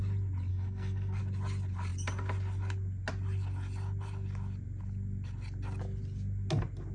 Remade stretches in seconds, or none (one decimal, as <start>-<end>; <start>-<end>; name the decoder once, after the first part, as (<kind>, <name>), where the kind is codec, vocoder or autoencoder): 0.5-1.2 (codec, SNAC)